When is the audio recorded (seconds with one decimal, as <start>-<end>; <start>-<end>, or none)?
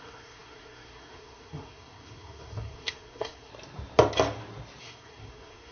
3.5-4.8